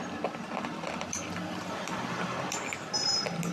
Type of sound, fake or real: real